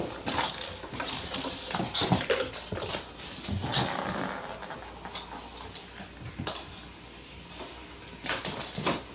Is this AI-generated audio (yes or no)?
no